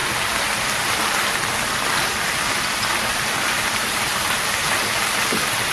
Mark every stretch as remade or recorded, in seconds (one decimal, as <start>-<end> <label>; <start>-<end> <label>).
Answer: 0.0-3.1 recorded; 3.1-4.4 remade; 4.4-5.7 recorded